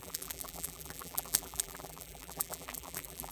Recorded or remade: remade